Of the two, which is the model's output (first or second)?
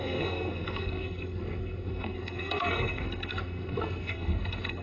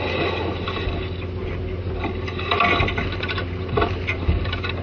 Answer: first